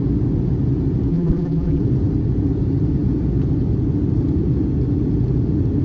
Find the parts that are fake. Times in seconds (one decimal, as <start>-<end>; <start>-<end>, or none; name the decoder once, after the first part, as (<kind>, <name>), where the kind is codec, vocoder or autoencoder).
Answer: 1.1-1.8 (vocoder, BigVGAN v2)